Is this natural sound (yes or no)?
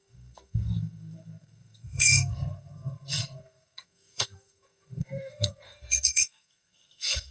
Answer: no